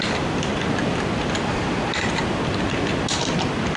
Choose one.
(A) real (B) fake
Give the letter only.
A